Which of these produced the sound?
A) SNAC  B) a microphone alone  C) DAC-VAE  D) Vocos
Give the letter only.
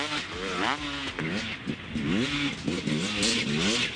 B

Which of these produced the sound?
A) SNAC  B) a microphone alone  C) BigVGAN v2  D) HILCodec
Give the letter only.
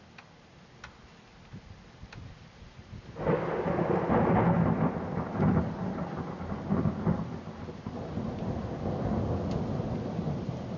B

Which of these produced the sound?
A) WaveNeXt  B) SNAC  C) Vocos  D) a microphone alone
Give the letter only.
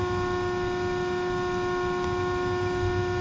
D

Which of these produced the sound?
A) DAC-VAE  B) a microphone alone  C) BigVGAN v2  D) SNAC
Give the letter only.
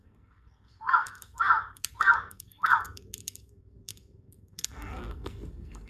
D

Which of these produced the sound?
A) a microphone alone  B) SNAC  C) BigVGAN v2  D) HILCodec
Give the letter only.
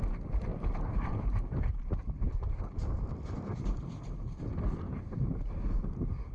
A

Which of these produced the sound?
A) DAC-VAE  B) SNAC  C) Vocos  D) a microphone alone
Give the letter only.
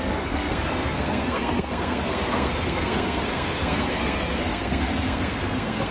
B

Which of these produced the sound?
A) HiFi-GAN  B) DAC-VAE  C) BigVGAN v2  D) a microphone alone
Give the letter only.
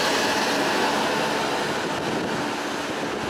D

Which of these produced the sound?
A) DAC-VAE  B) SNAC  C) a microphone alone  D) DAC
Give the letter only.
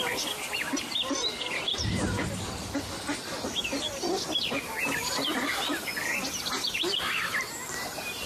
C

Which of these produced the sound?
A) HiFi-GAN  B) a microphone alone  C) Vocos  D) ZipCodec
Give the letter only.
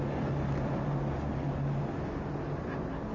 B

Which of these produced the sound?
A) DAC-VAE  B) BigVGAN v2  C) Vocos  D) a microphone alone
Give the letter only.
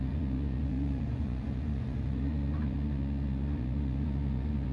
C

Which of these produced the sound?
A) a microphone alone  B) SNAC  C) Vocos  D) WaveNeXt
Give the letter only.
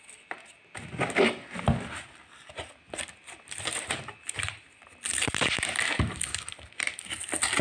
A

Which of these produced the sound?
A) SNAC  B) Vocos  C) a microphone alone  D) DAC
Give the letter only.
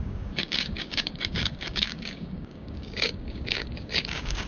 D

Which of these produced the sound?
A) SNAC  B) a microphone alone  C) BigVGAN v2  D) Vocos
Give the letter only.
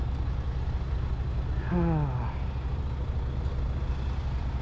B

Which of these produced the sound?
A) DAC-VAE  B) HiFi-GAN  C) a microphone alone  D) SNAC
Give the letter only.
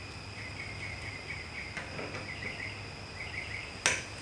C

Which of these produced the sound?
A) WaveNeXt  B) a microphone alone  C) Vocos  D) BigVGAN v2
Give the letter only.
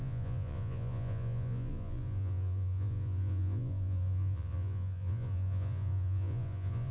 C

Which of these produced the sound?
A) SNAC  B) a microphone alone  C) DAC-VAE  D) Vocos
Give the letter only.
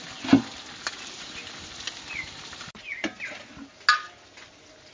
B